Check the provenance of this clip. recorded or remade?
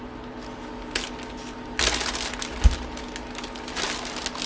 recorded